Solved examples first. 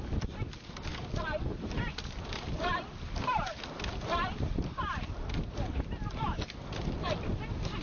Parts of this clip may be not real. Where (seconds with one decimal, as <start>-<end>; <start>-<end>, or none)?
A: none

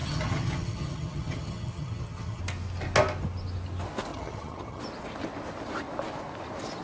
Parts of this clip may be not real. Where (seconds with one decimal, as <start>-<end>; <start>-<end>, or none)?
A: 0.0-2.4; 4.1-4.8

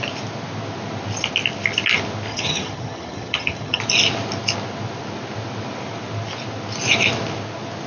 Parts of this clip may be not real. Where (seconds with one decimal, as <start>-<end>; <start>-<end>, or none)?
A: 2.3-3.8

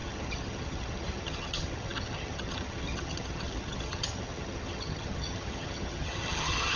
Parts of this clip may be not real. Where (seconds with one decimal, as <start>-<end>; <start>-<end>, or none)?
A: 0.0-6.8

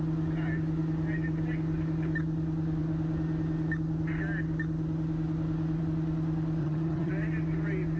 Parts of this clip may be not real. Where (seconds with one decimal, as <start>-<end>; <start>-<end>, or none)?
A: 6.6-7.1

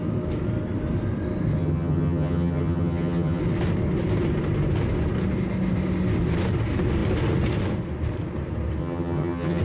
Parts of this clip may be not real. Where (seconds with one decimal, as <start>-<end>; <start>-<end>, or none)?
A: 1.6-3.4; 8.8-9.6

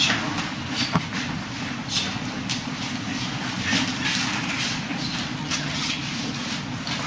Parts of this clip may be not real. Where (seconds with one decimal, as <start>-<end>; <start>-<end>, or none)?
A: 5.4-6.0

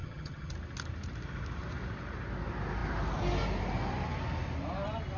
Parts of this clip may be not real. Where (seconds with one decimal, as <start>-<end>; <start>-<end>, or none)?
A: 0.0-0.5